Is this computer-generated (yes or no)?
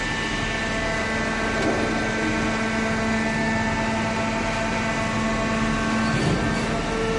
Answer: no